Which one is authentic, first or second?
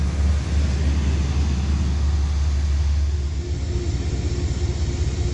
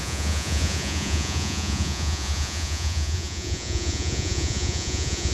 first